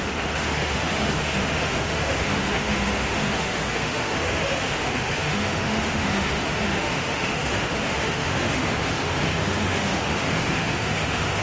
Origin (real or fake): fake